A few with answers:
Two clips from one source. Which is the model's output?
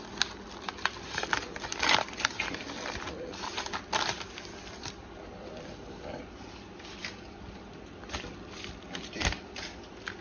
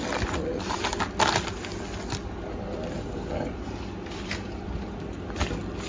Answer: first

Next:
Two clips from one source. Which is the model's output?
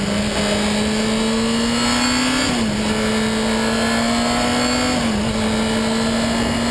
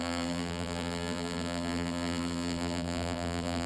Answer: second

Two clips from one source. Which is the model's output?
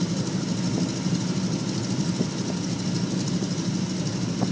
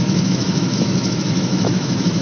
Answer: second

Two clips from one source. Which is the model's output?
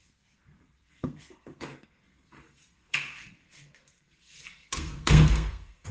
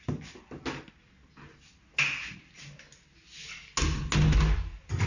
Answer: first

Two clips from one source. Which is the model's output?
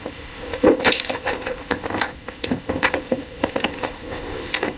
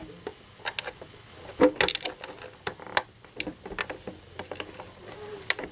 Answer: first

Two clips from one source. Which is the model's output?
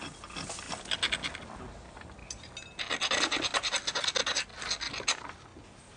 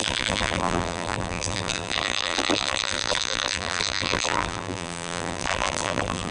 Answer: second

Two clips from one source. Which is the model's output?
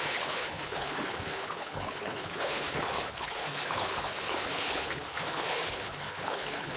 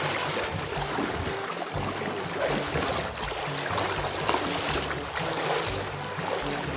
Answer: first